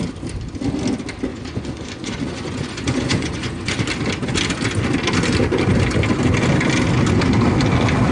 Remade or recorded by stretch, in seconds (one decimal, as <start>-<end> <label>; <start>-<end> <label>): 0.0-1.3 recorded; 1.3-3.8 remade; 3.8-8.1 recorded